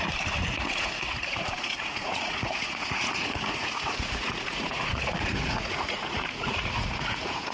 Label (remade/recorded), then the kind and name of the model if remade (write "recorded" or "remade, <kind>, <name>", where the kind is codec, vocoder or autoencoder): remade, vocoder, Vocos